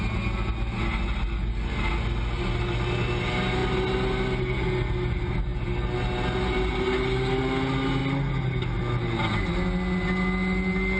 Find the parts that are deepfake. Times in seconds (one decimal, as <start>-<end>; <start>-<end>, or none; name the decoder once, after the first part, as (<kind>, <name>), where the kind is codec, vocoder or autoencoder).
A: none